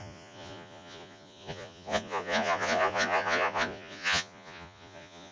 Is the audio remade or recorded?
remade